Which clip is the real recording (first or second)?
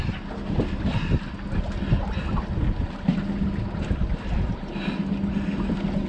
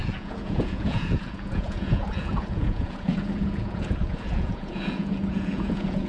first